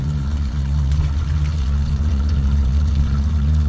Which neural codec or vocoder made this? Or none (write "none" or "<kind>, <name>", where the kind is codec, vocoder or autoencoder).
vocoder, Vocos